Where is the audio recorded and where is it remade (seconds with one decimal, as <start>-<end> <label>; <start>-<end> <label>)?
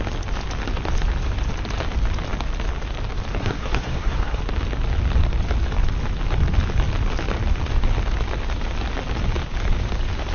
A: 0.0-3.4 recorded; 3.4-4.4 remade; 4.4-10.3 recorded